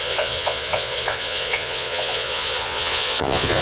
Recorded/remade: remade